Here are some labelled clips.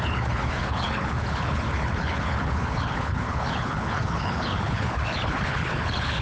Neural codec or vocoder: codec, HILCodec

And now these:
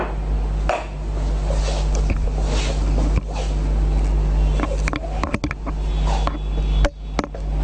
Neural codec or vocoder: none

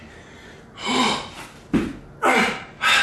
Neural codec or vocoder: none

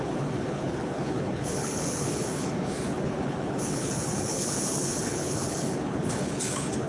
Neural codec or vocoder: codec, HILCodec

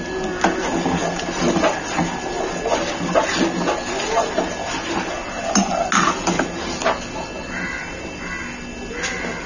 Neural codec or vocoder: none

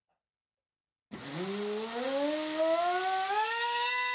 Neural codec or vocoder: none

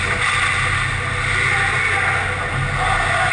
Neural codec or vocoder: none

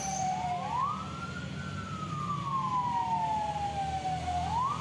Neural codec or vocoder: none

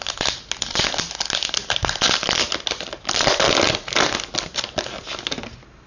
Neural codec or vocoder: none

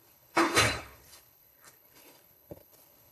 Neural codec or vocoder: codec, HILCodec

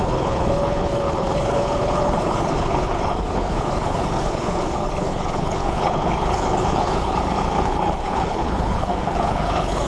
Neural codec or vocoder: codec, HILCodec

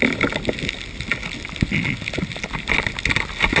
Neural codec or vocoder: none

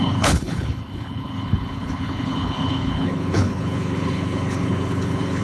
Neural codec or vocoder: codec, HILCodec